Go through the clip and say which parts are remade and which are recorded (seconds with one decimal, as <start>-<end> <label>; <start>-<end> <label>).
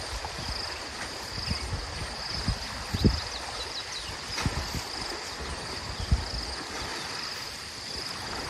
0.0-6.9 recorded; 6.9-7.7 remade; 7.7-8.5 recorded